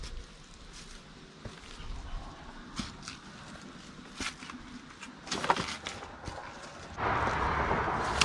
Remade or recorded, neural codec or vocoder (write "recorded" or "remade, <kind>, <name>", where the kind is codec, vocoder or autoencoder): recorded